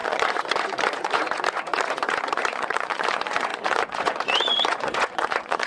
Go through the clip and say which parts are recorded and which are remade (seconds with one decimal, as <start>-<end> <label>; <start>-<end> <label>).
0.0-5.7 remade